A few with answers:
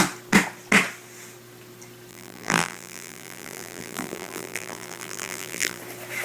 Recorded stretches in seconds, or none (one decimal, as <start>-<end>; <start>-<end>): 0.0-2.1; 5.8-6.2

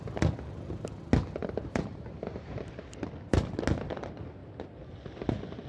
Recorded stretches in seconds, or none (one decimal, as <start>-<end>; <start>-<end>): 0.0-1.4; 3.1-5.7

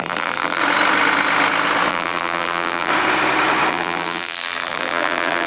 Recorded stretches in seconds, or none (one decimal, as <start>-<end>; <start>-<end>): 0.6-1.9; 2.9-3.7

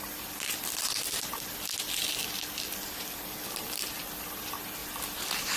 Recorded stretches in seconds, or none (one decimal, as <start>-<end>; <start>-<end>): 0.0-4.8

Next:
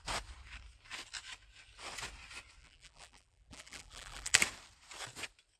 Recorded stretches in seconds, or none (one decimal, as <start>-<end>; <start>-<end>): 0.0-2.6; 4.4-5.6

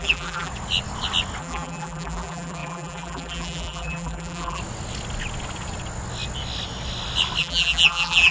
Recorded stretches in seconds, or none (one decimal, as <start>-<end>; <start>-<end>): 0.5-1.4; 4.6-7.4